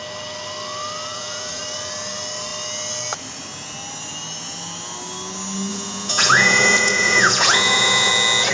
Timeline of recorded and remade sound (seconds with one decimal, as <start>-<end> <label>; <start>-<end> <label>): 0.0-1.1 recorded; 1.1-1.6 remade; 1.6-5.7 recorded; 5.7-8.1 remade; 8.1-8.5 recorded